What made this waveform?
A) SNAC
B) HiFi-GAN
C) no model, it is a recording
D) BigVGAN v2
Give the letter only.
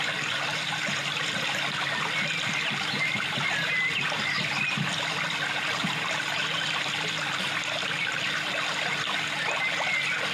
C